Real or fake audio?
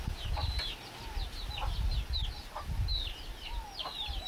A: real